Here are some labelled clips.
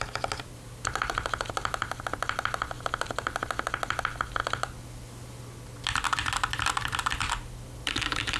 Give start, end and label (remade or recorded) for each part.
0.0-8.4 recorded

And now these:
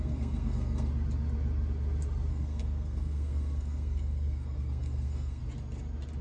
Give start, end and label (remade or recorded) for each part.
0.0-0.9 remade; 0.9-2.3 recorded; 2.3-5.4 remade; 5.4-6.2 recorded

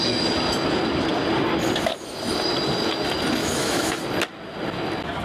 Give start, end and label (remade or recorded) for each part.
0.0-3.4 recorded; 3.4-4.0 remade; 4.0-5.2 recorded

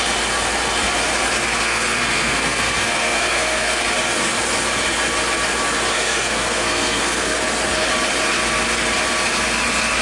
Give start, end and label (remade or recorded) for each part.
0.0-1.6 recorded; 1.6-3.8 remade; 3.8-5.9 recorded; 5.9-7.4 remade; 7.4-10.0 recorded

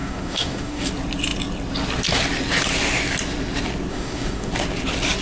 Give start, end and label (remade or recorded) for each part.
0.0-0.9 remade; 0.9-3.9 recorded; 3.9-4.5 remade; 4.5-5.2 recorded

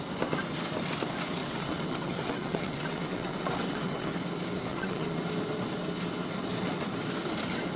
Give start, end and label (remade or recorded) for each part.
0.0-1.4 recorded; 1.4-4.1 remade; 4.1-4.7 recorded; 4.7-5.2 remade; 5.2-7.8 recorded

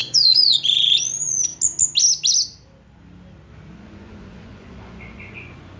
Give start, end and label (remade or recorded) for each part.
0.0-1.5 remade; 1.5-3.7 recorded; 3.7-5.8 remade

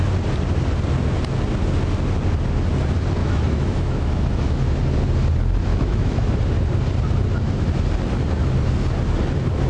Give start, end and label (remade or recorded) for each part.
0.0-3.2 recorded; 3.2-4.8 remade; 4.8-5.7 recorded; 5.7-6.4 remade; 6.4-9.7 recorded